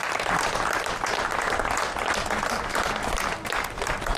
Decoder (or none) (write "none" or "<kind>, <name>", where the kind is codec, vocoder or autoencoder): none